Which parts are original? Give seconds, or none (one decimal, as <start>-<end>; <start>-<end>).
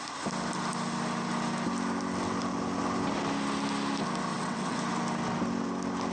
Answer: 0.0-4.3; 4.8-6.1